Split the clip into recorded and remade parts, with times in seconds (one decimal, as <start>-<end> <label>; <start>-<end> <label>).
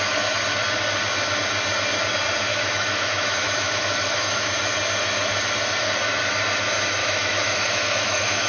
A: 0.0-2.5 recorded; 2.5-4.5 remade; 4.5-7.0 recorded; 7.0-8.5 remade